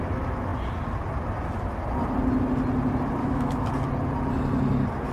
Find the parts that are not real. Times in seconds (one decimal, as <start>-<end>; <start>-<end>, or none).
3.2-3.7